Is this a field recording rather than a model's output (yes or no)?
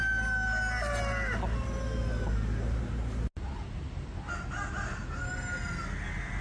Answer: yes